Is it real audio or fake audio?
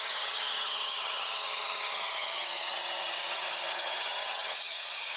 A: fake